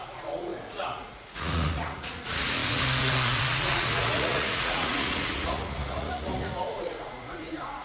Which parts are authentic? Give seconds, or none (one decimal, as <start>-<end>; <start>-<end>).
none